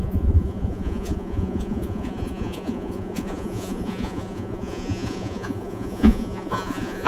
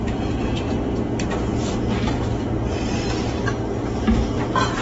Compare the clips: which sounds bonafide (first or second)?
second